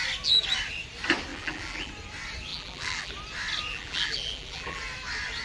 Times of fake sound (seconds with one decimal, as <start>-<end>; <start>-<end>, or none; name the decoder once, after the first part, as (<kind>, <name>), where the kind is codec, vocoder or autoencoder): 1.3-1.9 (vocoder, BigVGAN v2); 2.5-3.1; 3.7-4.8